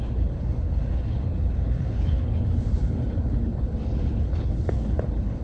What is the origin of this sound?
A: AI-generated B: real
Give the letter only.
A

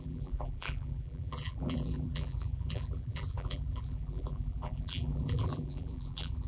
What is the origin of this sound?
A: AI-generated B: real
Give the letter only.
A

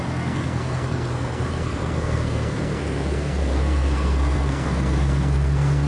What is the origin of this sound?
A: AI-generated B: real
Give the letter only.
A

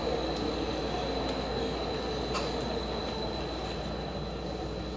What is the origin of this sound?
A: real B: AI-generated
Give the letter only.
A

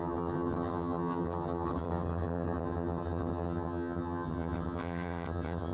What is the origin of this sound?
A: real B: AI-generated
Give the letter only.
B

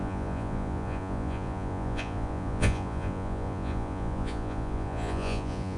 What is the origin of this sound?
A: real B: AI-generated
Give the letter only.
B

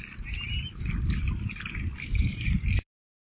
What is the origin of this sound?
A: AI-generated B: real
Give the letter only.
B